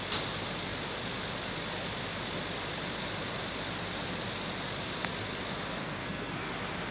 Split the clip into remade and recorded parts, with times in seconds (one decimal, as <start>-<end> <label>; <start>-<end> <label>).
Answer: 0.0-5.8 recorded; 5.8-6.5 remade; 6.5-6.9 recorded